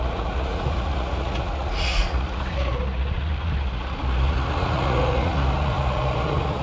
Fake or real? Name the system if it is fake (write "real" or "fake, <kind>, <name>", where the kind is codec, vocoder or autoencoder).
fake, vocoder, Vocos